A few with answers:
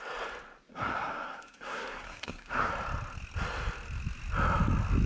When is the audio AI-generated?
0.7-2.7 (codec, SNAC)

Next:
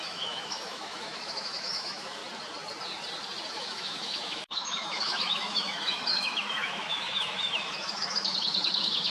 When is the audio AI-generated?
0.0-2.2 (autoencoder, DAC-VAE); 3.5-9.1

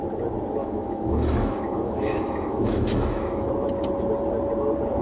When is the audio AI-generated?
0.6-3.5 (autoencoder, DAC-VAE)

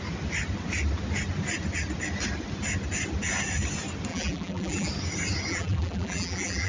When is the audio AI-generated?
4.1-4.9 (vocoder, BigVGAN v2); 5.5-6.7